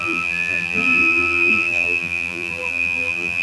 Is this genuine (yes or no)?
no